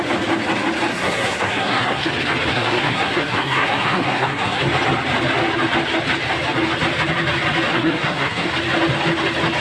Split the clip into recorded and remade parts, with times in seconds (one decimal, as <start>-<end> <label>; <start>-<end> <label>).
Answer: 0.0-0.9 recorded; 0.9-2.1 remade; 2.1-2.5 recorded; 2.5-4.6 remade; 4.6-7.7 recorded; 7.7-8.5 remade; 8.5-9.6 recorded